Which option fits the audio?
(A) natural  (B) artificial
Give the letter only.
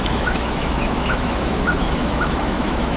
B